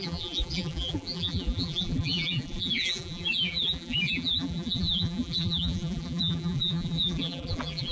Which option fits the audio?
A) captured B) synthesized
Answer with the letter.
B